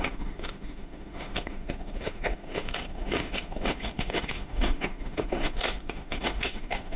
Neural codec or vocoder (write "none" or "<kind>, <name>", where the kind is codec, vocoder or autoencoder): autoencoder, DAC-VAE